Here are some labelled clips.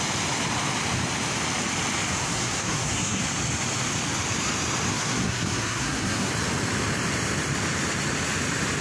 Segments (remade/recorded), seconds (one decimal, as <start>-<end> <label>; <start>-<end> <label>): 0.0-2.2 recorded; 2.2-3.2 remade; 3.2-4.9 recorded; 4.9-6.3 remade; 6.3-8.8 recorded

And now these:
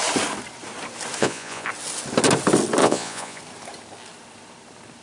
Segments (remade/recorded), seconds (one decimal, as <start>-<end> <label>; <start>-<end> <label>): 0.0-1.2 recorded; 1.2-1.7 remade; 1.7-2.8 recorded; 2.8-3.4 remade; 3.4-5.0 recorded

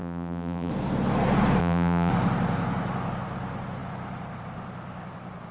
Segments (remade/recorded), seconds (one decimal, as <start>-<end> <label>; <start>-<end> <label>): 0.0-0.7 remade; 0.7-1.6 recorded; 1.6-2.1 remade; 2.1-5.5 recorded

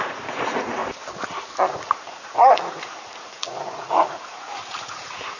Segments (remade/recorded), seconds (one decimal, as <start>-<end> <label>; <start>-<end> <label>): 0.0-0.8 remade; 0.8-1.7 recorded; 1.7-5.4 remade

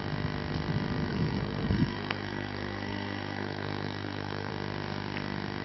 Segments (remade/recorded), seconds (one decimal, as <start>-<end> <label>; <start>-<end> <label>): 0.0-1.1 recorded; 1.1-4.5 remade; 4.5-5.6 recorded